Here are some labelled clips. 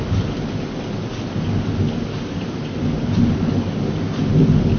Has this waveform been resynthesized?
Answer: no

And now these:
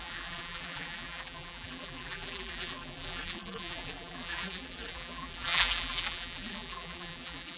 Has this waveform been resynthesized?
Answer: yes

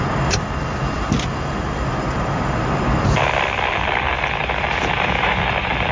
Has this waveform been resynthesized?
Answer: yes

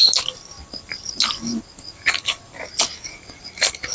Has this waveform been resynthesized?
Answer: no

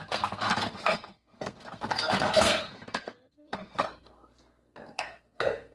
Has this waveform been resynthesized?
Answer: yes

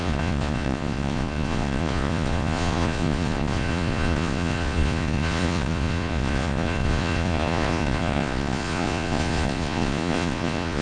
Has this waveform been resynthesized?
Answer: yes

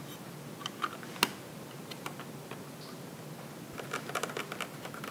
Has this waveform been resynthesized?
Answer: no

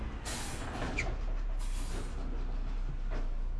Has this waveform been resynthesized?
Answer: no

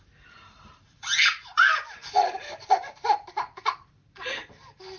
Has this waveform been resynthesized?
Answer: yes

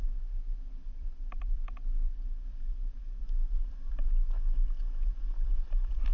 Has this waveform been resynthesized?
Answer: yes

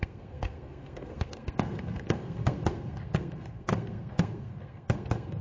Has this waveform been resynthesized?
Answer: yes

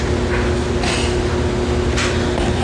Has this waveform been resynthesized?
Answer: no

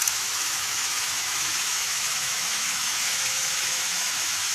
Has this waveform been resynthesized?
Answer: yes